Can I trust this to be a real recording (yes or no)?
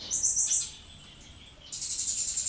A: yes